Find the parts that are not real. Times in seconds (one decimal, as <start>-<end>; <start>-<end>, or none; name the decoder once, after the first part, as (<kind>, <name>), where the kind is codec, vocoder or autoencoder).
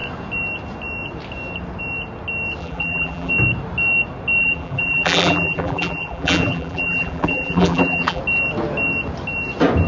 2.6-3.3 (vocoder, BigVGAN v2); 4.4-8.2